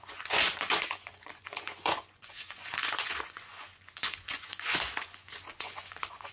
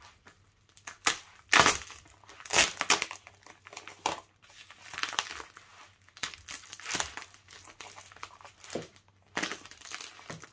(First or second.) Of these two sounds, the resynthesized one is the first